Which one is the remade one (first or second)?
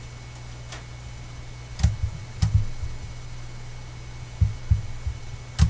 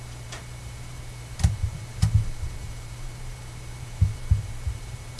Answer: second